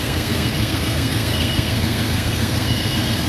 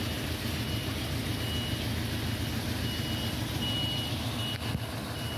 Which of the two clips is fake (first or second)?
first